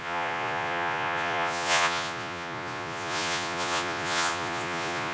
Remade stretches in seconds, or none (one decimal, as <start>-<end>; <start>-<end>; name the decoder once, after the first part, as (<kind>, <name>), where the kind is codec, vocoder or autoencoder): 0.0-5.1 (vocoder, Vocos)